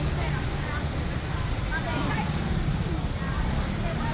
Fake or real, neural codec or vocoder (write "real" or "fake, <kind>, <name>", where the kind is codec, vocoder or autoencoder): real